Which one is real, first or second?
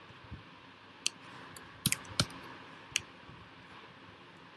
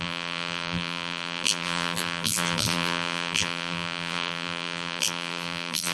first